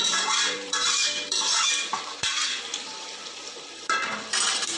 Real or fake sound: fake